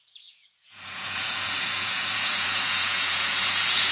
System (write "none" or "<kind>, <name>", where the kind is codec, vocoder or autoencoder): vocoder, Vocos